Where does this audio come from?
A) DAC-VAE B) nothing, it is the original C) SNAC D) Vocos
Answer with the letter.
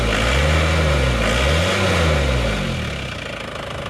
B